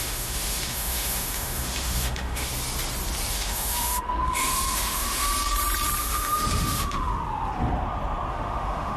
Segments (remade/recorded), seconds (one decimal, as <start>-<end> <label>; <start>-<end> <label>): 0.0-2.5 remade; 2.5-3.3 recorded; 3.3-5.3 remade; 5.3-6.0 recorded; 6.0-7.1 remade; 7.1-8.3 recorded; 8.3-9.0 remade